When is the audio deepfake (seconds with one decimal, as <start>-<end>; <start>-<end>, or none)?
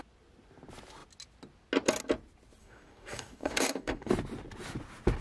2.6-4.1